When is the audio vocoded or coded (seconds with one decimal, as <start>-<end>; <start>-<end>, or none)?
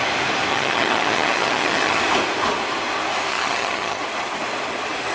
0.5-2.0; 3.3-4.0